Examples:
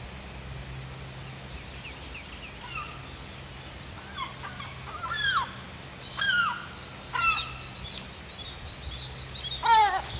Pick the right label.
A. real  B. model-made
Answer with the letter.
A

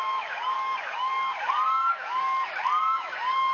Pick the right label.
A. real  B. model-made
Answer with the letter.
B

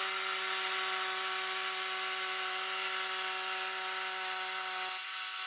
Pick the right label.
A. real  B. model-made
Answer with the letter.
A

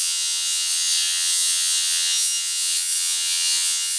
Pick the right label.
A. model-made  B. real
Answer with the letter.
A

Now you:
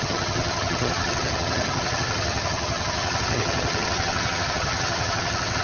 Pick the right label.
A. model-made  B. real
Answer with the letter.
A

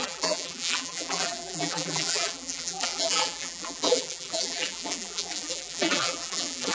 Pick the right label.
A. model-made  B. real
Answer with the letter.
A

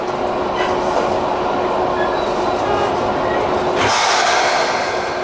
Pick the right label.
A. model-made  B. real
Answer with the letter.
B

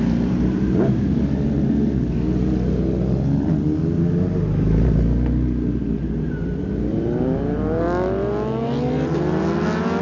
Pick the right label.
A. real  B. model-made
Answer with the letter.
A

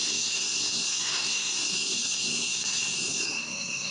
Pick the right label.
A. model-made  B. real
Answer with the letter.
A